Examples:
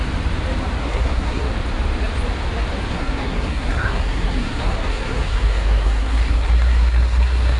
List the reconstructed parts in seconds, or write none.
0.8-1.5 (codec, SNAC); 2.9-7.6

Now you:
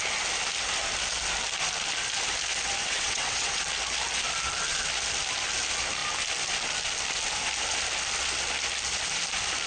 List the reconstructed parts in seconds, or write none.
2.8-3.6 (vocoder, WaveNeXt)